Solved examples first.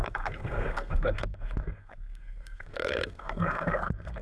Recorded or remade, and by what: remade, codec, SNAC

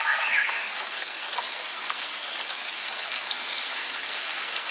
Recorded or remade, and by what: remade, codec, SNAC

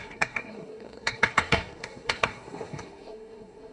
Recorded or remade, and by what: remade, codec, SNAC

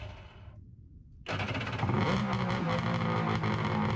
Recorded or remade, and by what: recorded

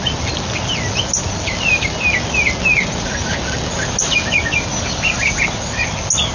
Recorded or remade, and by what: recorded